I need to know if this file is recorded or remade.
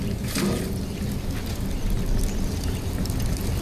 recorded